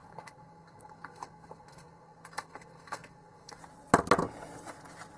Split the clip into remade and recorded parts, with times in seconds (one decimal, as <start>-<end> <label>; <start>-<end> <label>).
0.0-3.6 remade; 3.6-5.2 recorded